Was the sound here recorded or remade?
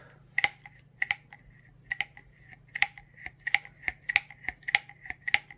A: recorded